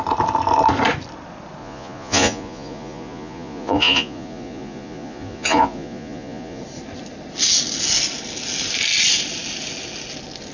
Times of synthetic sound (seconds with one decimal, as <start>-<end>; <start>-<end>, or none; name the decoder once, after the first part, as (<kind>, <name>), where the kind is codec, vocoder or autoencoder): 1.6-6.6 (vocoder, Vocos)